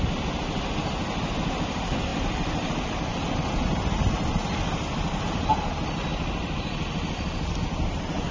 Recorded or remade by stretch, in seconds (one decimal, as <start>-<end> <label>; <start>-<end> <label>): 0.0-2.1 recorded; 2.1-4.1 remade; 4.1-8.3 recorded